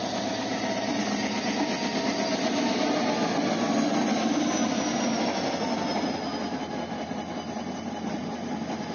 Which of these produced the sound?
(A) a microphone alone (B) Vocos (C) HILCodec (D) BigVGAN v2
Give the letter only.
A